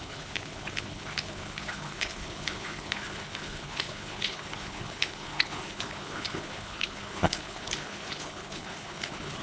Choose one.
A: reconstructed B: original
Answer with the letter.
A